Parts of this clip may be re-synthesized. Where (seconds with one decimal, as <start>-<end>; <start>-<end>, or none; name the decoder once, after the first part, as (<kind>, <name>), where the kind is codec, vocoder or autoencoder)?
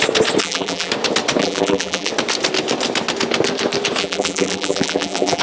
0.4-0.9 (vocoder, BigVGAN v2); 1.4-2.1; 4.0-5.4